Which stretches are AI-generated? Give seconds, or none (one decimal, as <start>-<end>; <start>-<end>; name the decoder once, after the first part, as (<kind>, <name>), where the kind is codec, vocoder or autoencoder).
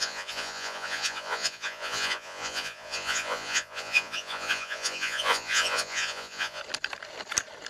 0.0-6.6 (vocoder, Vocos)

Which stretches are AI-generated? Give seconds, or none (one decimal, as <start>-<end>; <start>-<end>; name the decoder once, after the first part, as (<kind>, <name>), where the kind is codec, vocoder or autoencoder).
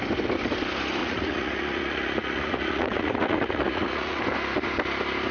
1.0-4.2 (vocoder, Vocos)